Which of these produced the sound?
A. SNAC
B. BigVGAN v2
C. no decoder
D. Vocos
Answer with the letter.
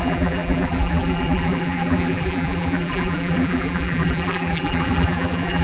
B